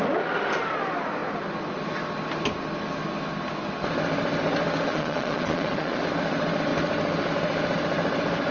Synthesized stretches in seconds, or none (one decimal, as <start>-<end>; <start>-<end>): 4.9-6.0